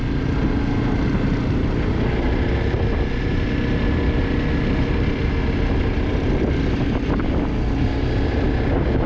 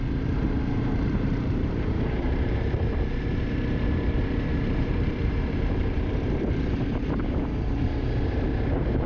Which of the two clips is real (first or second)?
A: first